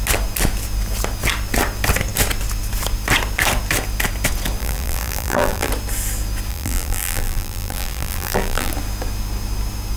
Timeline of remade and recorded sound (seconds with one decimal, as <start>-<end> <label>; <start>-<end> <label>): 0.0-4.6 recorded; 4.6-5.7 remade; 5.7-6.5 recorded; 6.5-8.7 remade; 8.7-10.0 recorded